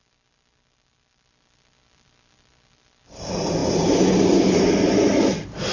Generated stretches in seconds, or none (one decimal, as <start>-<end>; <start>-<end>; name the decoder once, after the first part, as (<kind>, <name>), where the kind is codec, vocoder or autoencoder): none